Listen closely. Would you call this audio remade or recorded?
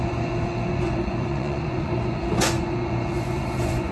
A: remade